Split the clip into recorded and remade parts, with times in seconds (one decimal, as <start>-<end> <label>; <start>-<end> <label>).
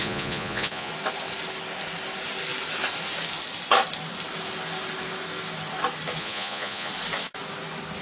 0.0-0.9 remade; 0.9-6.2 recorded; 6.2-6.9 remade; 6.9-8.0 recorded